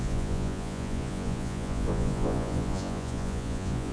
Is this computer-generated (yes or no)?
yes